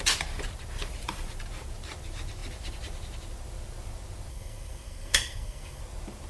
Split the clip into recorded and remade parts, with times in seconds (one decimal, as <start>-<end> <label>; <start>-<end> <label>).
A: 0.0-4.3 recorded; 4.3-5.8 remade; 5.8-6.3 recorded